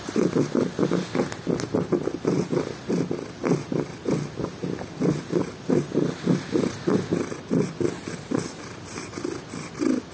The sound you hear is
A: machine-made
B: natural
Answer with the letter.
B